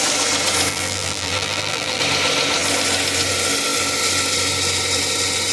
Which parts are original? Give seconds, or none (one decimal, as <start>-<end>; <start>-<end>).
0.0-0.7; 2.0-5.5